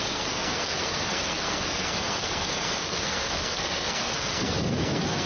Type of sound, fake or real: fake